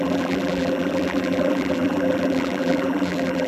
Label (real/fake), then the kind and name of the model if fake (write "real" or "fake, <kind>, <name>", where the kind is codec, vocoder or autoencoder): fake, vocoder, BigVGAN v2